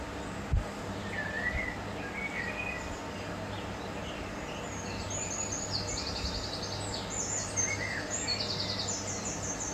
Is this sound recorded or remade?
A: recorded